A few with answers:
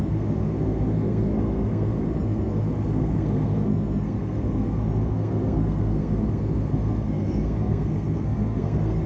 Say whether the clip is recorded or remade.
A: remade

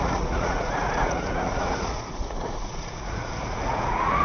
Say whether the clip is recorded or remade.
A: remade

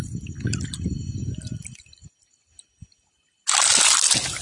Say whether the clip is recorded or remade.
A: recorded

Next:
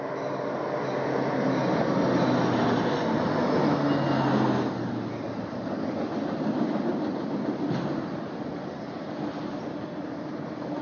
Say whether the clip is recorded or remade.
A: recorded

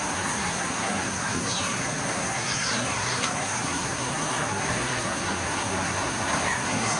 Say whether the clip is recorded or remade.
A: remade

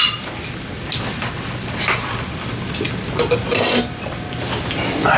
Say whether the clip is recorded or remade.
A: recorded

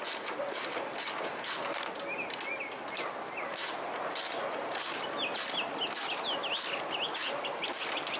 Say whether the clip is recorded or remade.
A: recorded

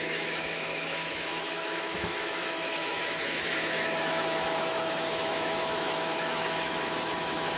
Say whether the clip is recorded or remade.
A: remade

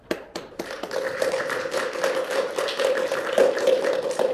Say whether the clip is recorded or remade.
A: recorded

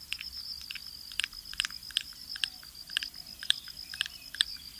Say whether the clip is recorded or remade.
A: recorded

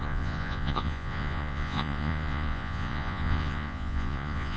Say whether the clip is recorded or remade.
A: remade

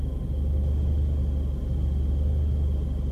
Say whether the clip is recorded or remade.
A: recorded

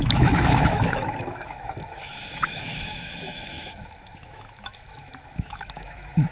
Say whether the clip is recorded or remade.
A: remade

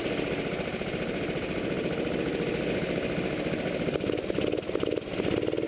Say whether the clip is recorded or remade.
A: recorded